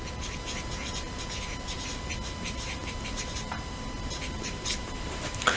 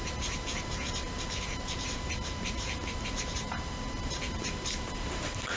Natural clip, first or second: first